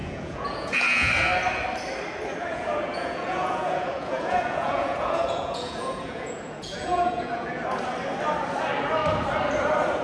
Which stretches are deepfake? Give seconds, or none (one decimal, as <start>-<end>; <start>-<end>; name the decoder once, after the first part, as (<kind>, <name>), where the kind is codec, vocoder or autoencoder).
0.0-1.1 (vocoder, Vocos); 2.5-7.6